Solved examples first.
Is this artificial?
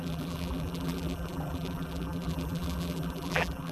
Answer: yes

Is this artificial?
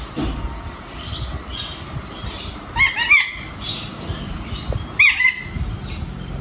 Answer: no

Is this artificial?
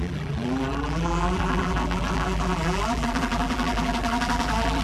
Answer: yes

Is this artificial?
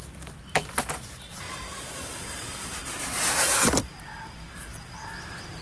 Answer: yes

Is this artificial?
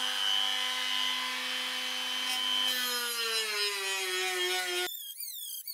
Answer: no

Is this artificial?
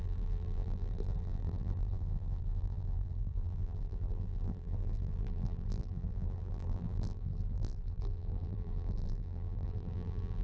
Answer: yes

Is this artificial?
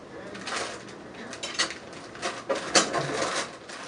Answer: no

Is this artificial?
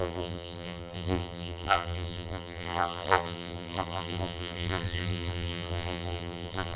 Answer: yes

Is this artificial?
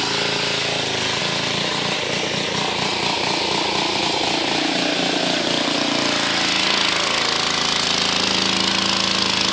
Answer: no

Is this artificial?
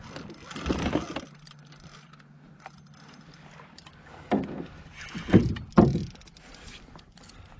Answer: no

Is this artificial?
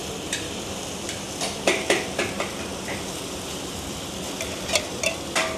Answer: yes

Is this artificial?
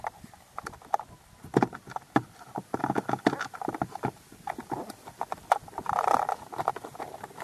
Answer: no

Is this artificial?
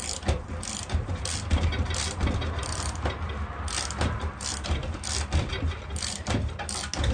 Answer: no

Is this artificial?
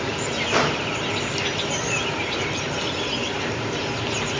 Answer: no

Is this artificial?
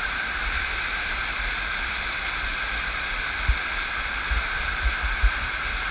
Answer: yes